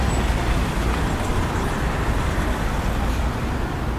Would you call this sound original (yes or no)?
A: yes